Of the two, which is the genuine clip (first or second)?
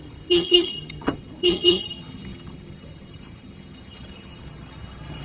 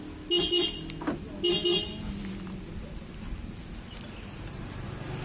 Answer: second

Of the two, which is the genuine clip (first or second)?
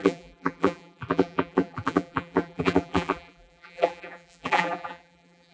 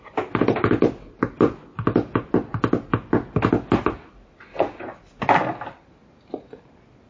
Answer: second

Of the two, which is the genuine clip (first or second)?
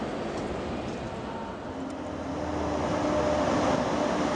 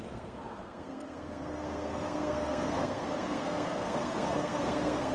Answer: first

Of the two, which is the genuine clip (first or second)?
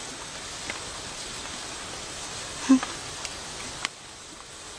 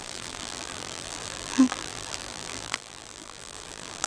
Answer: first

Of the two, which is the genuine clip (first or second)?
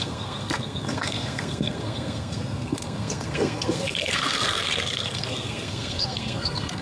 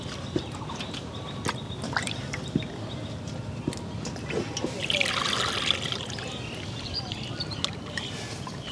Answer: second